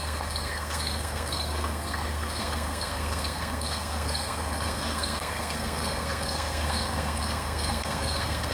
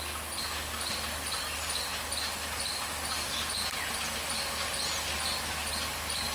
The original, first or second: second